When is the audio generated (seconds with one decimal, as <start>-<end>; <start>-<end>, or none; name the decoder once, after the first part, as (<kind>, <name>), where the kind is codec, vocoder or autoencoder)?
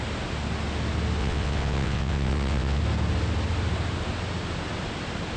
1.2-2.8 (vocoder, WaveNeXt)